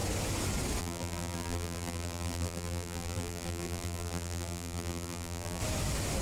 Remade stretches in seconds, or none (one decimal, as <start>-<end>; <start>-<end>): 0.8-5.6